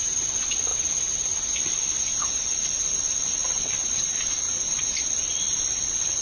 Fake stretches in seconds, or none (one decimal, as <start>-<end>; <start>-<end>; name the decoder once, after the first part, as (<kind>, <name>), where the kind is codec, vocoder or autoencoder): 3.8-4.8 (vocoder, Vocos)